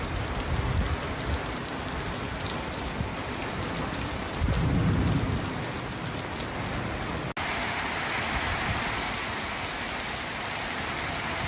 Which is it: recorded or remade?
recorded